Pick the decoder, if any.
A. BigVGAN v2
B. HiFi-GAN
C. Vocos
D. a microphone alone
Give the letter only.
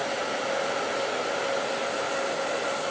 D